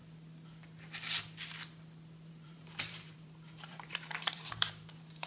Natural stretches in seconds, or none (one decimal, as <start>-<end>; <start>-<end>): 0.0-2.3